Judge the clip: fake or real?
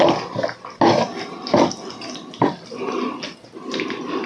real